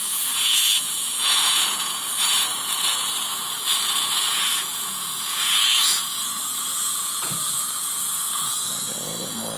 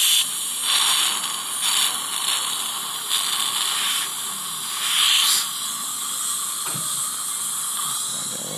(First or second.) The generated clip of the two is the first